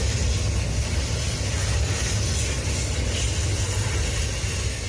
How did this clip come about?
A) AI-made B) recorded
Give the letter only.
B